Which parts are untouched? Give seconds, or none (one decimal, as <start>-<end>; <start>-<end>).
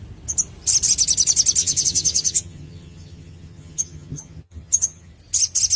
0.0-1.6; 5.1-5.8